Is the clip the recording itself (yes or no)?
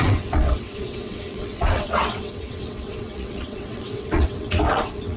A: no